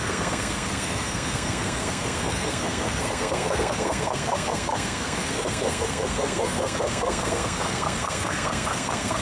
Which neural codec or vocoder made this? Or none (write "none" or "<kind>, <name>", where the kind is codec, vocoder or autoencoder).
codec, SNAC